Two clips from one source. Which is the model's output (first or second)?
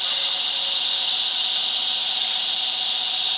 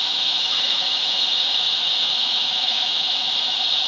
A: second